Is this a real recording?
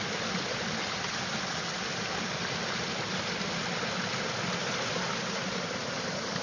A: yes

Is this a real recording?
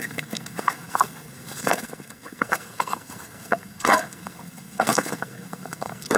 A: no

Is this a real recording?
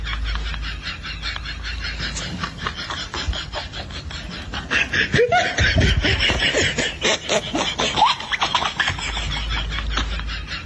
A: yes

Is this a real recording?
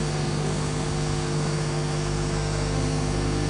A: no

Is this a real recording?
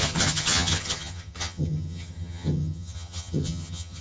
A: no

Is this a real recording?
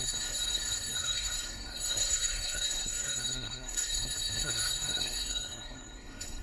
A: no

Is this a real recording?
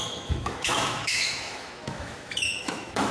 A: no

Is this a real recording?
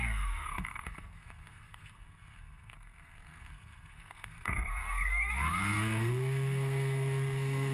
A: no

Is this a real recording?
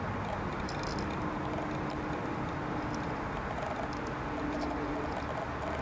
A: yes